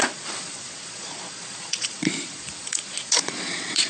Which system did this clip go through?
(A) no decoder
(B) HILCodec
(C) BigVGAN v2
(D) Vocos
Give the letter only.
D